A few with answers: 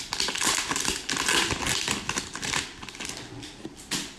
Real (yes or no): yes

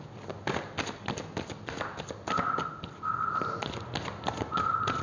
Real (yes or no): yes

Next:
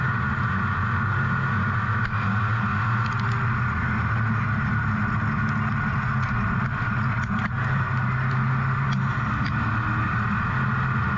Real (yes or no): yes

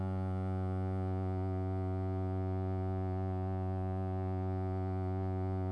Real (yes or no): no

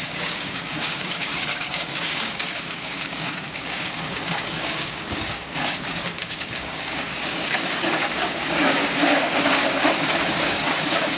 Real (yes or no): no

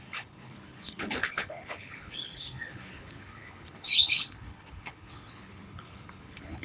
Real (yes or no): no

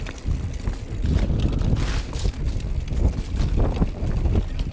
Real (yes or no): yes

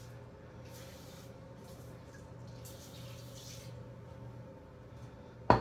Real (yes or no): yes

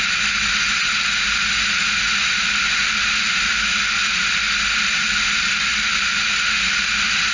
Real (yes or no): yes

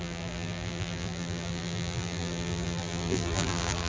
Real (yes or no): no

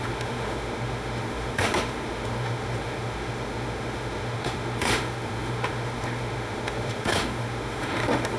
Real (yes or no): no